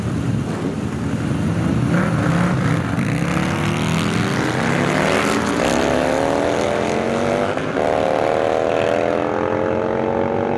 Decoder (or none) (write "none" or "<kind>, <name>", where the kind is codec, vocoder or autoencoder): none